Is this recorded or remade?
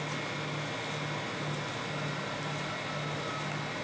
recorded